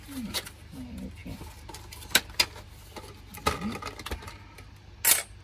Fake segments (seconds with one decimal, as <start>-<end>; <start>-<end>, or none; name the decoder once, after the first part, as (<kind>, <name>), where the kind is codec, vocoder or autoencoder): none